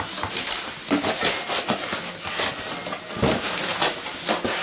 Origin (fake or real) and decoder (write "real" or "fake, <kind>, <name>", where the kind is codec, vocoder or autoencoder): real